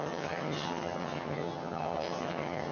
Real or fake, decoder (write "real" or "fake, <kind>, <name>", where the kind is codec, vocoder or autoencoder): fake, vocoder, HiFi-GAN